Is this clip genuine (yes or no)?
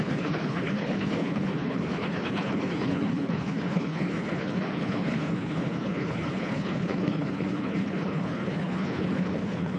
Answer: no